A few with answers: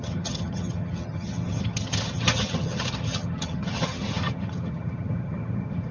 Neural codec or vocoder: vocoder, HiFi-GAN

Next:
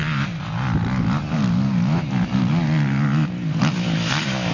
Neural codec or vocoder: none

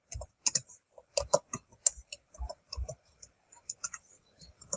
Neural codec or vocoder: none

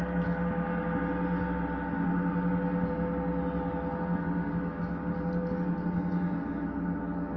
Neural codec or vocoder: none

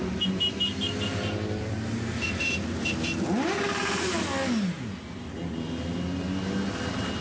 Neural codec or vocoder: none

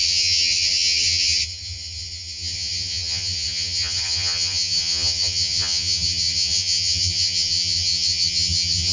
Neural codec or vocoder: vocoder, HiFi-GAN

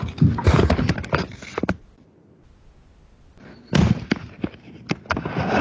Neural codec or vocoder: none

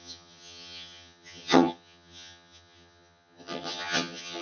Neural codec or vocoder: vocoder, HiFi-GAN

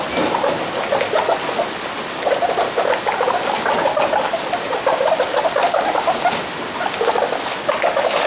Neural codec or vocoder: none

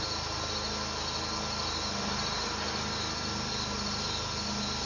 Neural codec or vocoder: none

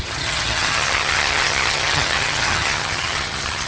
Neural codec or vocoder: vocoder, HiFi-GAN